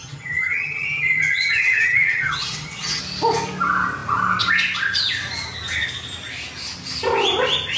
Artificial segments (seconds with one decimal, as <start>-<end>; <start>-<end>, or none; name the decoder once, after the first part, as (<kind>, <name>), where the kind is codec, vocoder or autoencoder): 0.0-3.0 (vocoder, HiFi-GAN)